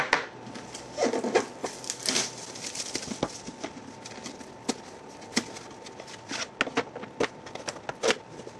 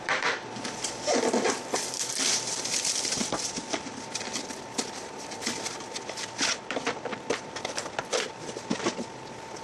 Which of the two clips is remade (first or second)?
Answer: second